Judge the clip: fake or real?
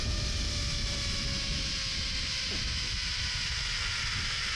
real